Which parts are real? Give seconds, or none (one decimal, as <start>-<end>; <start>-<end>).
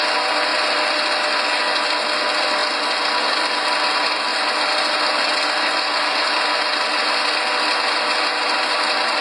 0.0-0.5; 1.1-9.2